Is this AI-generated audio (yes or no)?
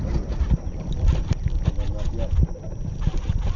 no